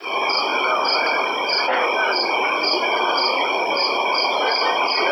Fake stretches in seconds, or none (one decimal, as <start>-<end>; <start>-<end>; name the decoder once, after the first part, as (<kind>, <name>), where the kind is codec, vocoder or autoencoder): none